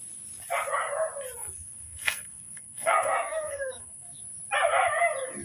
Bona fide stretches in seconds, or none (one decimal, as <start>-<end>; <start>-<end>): 0.0-1.4; 4.2-5.4